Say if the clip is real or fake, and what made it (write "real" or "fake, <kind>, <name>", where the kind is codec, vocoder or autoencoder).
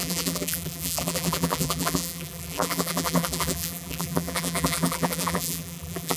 fake, vocoder, BigVGAN v2